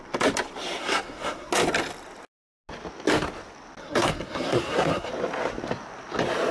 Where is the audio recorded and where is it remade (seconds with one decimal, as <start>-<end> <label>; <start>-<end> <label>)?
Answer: 0.0-0.8 recorded; 0.8-1.5 remade; 1.5-3.8 recorded; 3.8-5.1 remade; 5.1-6.5 recorded